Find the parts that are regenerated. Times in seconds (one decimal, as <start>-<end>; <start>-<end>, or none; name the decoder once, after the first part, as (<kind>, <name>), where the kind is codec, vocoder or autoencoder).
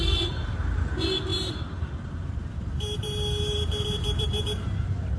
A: 0.0-5.2 (vocoder, BigVGAN v2)